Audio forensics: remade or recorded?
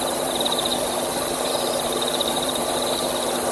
remade